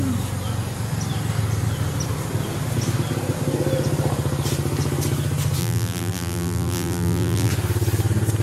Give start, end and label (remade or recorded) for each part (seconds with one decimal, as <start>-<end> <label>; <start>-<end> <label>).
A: 0.0-5.6 recorded; 5.6-7.5 remade; 7.5-8.4 recorded

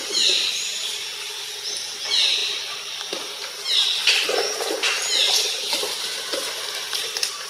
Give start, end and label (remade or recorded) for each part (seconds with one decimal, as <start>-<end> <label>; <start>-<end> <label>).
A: 0.0-7.5 recorded

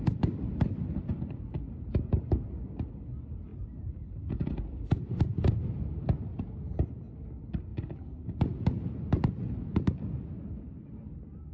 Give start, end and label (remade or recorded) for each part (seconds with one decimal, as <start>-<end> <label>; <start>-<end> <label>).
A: 0.0-3.5 recorded; 3.5-4.3 remade; 4.3-11.5 recorded

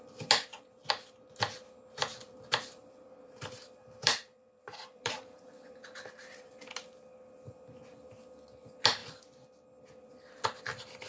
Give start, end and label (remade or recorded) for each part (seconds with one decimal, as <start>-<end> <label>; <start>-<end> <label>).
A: 0.0-2.8 recorded; 2.8-6.4 remade; 6.4-11.1 recorded

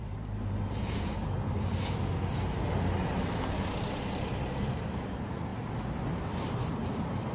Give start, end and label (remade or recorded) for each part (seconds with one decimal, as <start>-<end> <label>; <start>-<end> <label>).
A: 0.0-1.2 remade; 1.2-3.0 recorded; 3.0-5.5 remade; 5.5-6.1 recorded; 6.1-7.3 remade